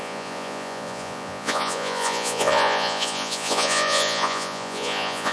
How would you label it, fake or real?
fake